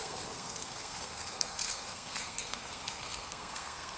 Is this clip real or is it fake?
fake